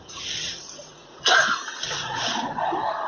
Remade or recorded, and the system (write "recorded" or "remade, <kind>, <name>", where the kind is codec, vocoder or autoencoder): remade, vocoder, Vocos